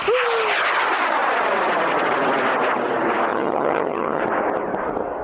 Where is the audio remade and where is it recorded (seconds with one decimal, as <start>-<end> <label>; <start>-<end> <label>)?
0.0-3.3 recorded; 3.3-4.2 remade; 4.2-5.2 recorded

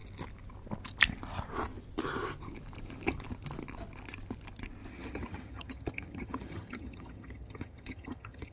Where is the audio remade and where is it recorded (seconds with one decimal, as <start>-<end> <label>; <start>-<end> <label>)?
0.0-4.9 recorded; 4.9-8.5 remade

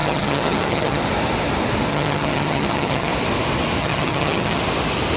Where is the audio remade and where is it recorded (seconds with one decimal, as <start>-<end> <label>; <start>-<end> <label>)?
0.0-1.0 remade; 1.0-1.9 recorded; 1.9-3.1 remade; 3.1-3.8 recorded; 3.8-4.6 remade; 4.6-5.2 recorded

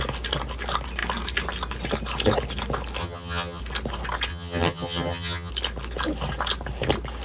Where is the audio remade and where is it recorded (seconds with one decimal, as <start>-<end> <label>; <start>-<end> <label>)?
0.0-3.0 recorded; 3.0-3.6 remade; 3.6-4.3 recorded; 4.3-5.5 remade; 5.5-7.2 recorded

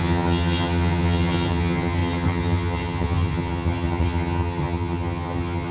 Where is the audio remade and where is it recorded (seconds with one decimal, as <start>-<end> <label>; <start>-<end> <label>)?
0.0-5.7 remade